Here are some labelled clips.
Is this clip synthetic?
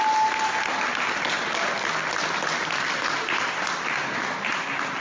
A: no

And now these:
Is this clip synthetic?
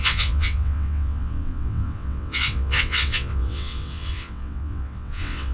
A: yes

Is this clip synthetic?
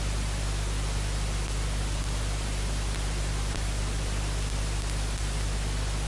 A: no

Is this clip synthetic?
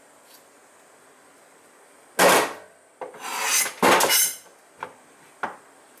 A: no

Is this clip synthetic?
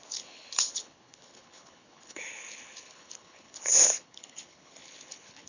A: yes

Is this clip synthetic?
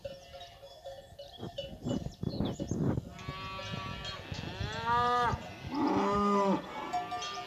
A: no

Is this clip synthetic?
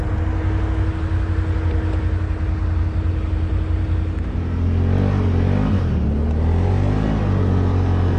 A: no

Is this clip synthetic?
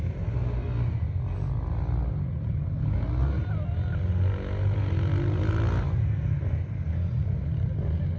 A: no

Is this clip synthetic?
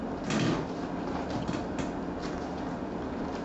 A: no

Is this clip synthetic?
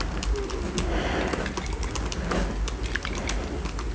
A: no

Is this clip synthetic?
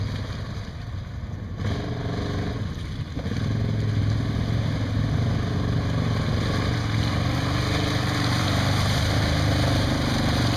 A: no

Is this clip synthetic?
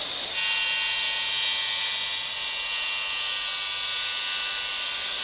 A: no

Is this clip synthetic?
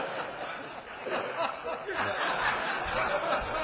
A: no